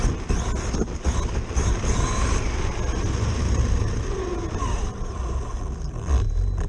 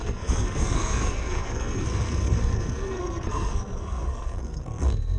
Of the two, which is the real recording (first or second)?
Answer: first